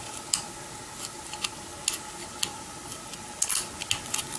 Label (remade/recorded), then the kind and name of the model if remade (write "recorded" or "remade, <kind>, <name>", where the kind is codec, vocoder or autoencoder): recorded